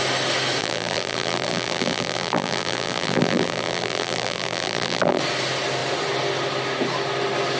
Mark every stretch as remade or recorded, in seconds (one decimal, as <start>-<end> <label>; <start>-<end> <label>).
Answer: 0.0-0.6 recorded; 0.6-5.2 remade; 5.2-7.6 recorded